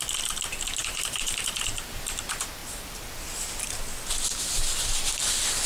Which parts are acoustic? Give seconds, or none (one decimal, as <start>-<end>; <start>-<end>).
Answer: 0.0-0.8; 2.2-5.7